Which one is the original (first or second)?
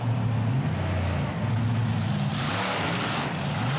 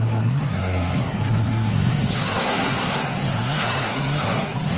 first